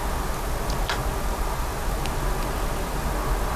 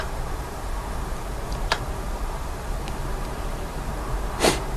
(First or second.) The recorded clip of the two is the first